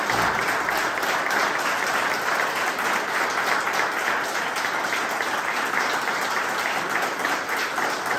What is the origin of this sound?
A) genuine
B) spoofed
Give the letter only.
A